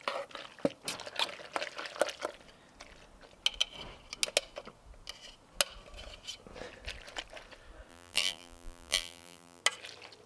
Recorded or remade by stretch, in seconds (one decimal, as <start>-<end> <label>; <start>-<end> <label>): 0.0-7.9 recorded; 7.9-9.6 remade; 9.6-10.3 recorded